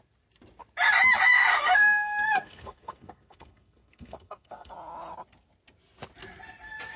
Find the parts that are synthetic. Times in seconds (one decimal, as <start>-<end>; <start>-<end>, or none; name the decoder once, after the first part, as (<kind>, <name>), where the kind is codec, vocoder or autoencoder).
1.5-4.7 (codec, SNAC)